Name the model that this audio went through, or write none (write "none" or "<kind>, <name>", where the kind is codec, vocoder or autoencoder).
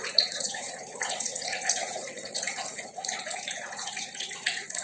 vocoder, Vocos